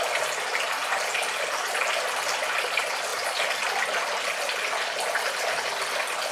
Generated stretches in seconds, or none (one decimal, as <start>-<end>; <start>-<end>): none